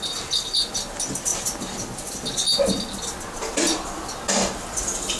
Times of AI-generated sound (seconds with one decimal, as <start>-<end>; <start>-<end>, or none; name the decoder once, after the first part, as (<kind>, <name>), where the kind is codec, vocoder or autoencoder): none